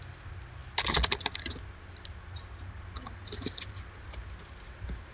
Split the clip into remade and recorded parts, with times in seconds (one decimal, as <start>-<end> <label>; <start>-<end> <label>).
0.0-5.1 recorded

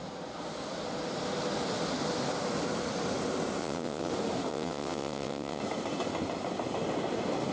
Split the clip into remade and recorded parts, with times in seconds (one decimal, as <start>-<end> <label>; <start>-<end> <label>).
0.0-3.6 recorded; 3.6-4.1 remade; 4.1-4.5 recorded; 4.5-5.6 remade; 5.6-7.5 recorded

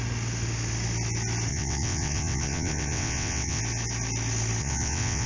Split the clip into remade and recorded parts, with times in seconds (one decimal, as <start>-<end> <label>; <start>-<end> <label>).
0.0-1.5 recorded; 1.5-3.6 remade; 3.6-4.6 recorded; 4.6-5.3 remade

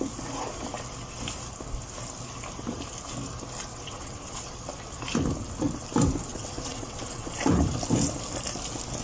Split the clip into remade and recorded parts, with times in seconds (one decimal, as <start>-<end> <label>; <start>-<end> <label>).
0.0-3.7 recorded; 3.7-4.5 remade; 4.5-6.3 recorded; 6.3-7.3 remade; 7.3-9.0 recorded